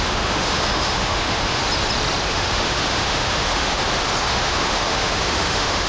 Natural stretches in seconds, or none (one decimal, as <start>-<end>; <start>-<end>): 1.6-2.3; 3.8-4.3